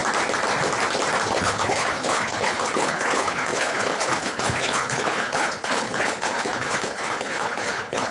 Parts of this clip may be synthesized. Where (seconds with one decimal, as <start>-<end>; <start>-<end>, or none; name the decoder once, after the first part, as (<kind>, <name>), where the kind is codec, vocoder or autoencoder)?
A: 1.3-8.1 (codec, HILCodec)